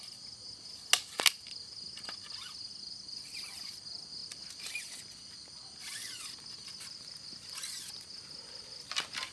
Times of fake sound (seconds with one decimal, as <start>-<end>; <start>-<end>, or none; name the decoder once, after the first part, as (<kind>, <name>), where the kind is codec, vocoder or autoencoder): none